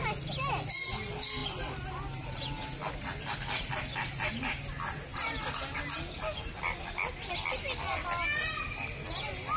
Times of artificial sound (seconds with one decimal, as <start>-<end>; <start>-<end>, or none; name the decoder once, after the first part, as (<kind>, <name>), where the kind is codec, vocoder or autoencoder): 5.1-5.8 (vocoder, BigVGAN v2)